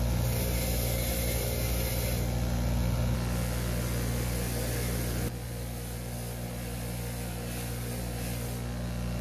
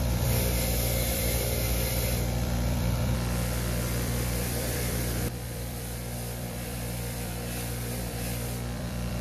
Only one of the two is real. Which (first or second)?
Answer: first